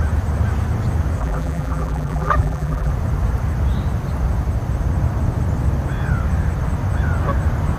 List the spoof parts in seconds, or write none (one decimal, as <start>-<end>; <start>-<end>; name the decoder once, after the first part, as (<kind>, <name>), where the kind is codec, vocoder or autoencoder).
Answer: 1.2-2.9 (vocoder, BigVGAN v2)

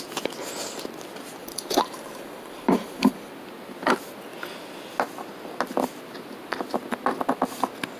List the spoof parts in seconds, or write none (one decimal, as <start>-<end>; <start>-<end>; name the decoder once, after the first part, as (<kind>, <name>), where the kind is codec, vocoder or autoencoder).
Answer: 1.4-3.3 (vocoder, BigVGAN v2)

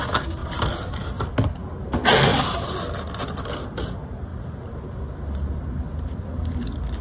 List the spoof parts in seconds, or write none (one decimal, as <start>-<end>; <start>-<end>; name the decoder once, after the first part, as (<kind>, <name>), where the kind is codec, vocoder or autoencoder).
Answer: 0.4-1.2 (vocoder, BigVGAN v2); 2.3-3.1; 4.3-4.9